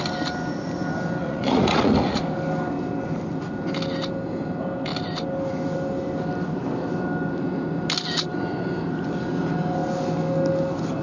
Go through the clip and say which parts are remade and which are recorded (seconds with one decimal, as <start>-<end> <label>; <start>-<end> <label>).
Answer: 0.0-1.2 recorded; 1.2-2.2 remade; 2.2-11.0 recorded